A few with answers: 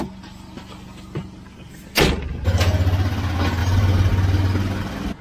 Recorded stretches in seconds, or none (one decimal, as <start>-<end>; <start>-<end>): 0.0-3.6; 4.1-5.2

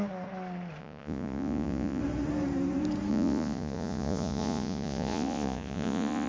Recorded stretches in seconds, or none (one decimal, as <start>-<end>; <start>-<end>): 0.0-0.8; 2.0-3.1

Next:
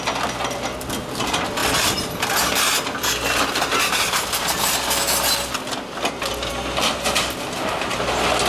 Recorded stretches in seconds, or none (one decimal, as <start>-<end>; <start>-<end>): 0.0-8.5